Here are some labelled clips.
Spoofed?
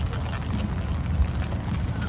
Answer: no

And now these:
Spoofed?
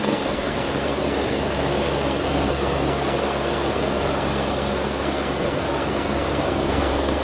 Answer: yes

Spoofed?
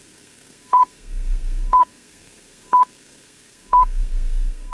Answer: yes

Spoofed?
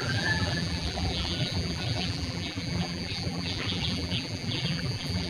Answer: yes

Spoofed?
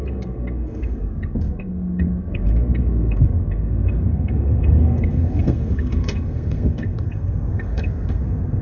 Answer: yes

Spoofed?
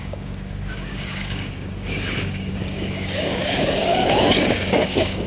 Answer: yes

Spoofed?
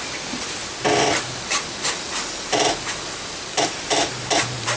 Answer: no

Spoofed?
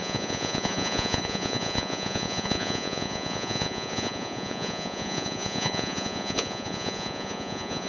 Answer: yes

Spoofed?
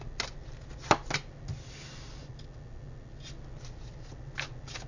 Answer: no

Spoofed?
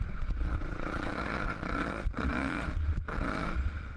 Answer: yes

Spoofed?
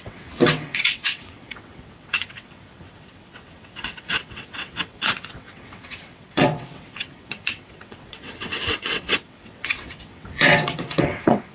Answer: yes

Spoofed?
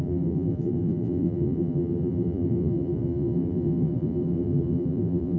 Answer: yes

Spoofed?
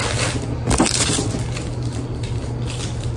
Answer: no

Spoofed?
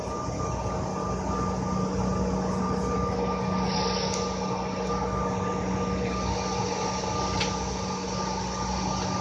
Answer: no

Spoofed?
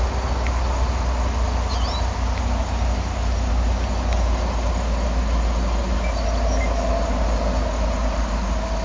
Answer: no